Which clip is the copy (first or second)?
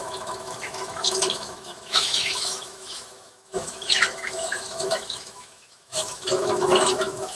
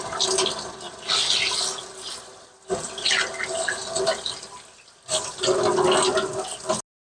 first